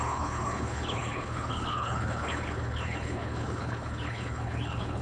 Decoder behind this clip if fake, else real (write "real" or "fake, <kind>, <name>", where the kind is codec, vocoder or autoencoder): fake, codec, HILCodec